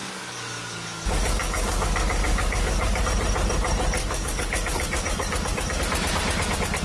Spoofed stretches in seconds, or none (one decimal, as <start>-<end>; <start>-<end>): 0.0-3.0; 4.0-5.8